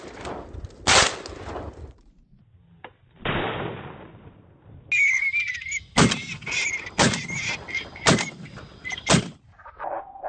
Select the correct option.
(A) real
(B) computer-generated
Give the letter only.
A